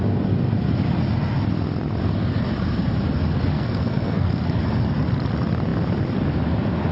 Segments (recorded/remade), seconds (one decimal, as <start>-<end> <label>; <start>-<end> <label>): 0.0-3.5 recorded; 3.5-4.6 remade; 4.6-6.9 recorded